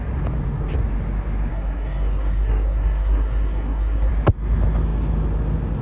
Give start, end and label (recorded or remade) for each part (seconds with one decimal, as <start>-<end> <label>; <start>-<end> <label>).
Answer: 0.0-1.5 recorded; 1.5-4.1 remade; 4.1-5.8 recorded